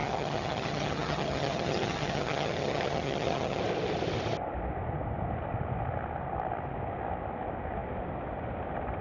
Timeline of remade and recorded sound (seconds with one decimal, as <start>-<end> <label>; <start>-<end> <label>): 0.0-3.6 remade; 3.6-9.0 recorded

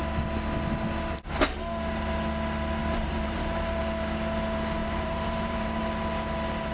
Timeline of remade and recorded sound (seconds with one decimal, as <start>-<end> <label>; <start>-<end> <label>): 0.0-2.8 recorded; 2.8-3.8 remade; 3.8-4.8 recorded; 4.8-5.8 remade; 5.8-6.7 recorded

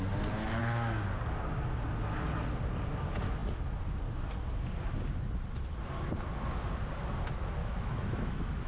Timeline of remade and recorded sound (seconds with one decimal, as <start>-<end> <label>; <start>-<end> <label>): 0.0-7.6 recorded; 7.6-8.7 remade